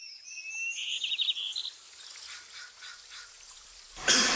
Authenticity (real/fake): real